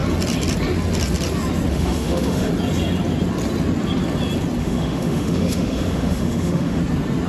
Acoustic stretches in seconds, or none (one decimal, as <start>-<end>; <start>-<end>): 0.0-1.7; 2.5-4.6; 6.8-7.3